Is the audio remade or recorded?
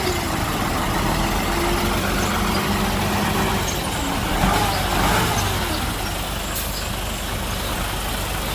recorded